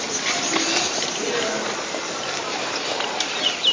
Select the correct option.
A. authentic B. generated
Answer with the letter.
A